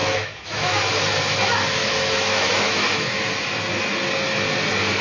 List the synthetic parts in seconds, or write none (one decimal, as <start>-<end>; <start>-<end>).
0.0-0.9; 1.8-3.3